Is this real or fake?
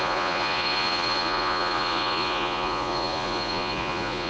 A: fake